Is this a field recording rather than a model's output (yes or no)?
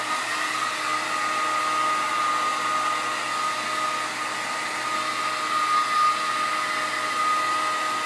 yes